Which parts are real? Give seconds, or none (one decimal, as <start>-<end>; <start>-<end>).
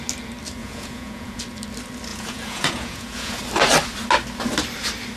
0.0-0.6; 1.4-2.1; 3.4-5.2